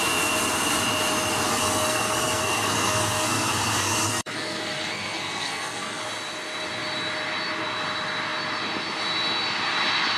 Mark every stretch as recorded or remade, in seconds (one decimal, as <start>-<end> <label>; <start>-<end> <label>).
0.0-1.5 recorded; 1.5-6.0 remade; 6.0-10.2 recorded